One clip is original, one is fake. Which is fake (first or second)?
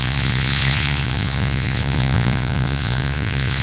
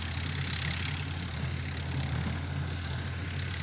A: first